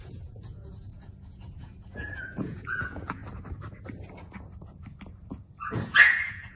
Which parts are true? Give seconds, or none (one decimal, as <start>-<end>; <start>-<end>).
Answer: 3.2-5.7

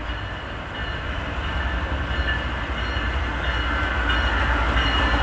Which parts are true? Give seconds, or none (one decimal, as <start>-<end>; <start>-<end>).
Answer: 0.0-5.2

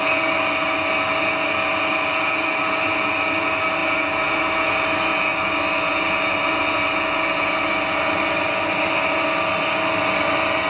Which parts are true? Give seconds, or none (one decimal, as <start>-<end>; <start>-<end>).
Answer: 0.0-10.7

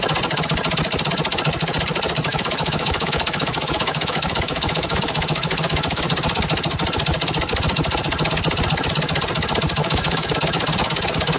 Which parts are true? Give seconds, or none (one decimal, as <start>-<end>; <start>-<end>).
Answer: 0.0-2.3; 6.0-9.8; 10.3-11.4

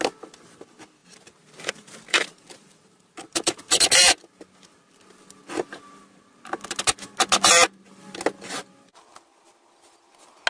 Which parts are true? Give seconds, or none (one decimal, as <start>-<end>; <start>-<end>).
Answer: 0.0-1.0; 3.8-10.5

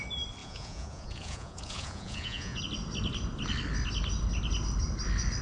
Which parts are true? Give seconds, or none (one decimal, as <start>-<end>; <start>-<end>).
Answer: 0.0-0.4; 2.6-5.4